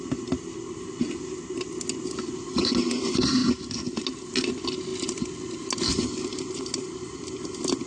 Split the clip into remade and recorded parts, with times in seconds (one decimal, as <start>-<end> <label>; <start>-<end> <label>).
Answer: 0.0-7.9 recorded